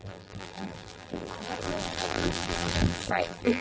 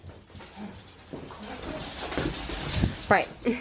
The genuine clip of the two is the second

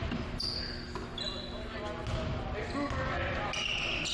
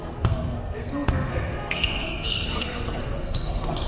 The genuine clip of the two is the first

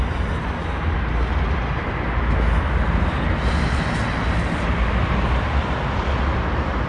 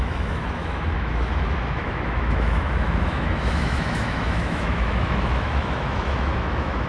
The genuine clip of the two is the first